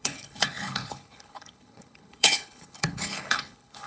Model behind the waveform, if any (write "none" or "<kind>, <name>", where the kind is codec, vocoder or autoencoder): codec, HILCodec